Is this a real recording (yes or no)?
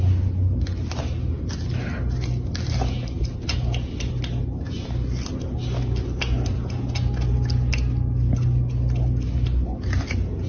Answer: yes